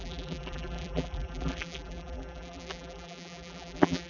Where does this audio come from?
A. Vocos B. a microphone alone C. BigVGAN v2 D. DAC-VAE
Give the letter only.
C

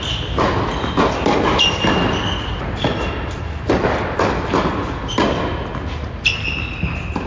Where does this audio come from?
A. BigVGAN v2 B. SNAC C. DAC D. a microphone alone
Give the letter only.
D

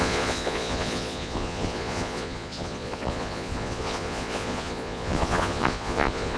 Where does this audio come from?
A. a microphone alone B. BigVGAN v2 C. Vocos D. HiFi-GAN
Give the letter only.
C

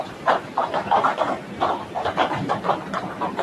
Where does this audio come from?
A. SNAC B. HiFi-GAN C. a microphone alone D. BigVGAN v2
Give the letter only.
D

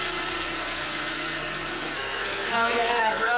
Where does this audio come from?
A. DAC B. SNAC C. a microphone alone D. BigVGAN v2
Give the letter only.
B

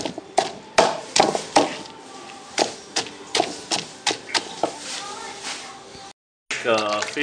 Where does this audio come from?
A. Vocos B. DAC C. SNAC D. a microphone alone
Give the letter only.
D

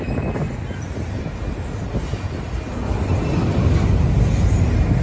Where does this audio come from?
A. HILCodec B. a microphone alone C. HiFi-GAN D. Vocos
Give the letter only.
B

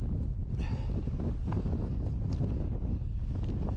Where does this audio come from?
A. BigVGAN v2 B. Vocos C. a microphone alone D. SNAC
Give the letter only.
C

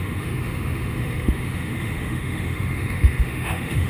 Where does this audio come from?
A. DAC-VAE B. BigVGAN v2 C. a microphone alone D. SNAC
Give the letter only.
A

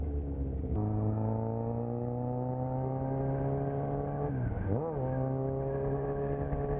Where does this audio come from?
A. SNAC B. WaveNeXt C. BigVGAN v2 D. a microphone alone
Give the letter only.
D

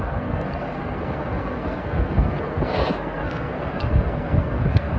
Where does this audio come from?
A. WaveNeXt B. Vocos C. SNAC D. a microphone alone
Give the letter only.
C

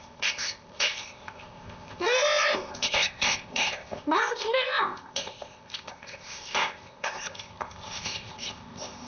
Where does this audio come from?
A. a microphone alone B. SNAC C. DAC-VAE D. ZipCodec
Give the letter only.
D